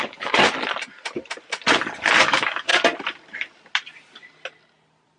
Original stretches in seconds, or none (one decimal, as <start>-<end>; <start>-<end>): 0.4-2.2; 2.7-5.2